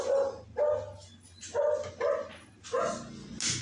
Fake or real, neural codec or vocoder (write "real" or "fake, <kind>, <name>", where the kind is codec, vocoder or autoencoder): real